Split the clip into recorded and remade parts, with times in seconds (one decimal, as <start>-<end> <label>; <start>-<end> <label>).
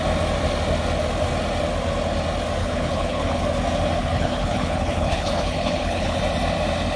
0.0-2.6 recorded; 2.6-3.4 remade; 3.4-4.0 recorded; 4.0-6.2 remade; 6.2-7.0 recorded